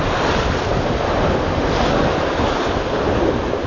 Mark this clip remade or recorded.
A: recorded